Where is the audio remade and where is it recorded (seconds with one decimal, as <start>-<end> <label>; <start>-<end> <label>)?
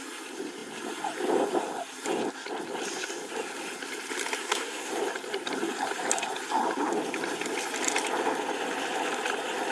0.0-4.4 recorded; 4.4-4.9 remade; 4.9-9.7 recorded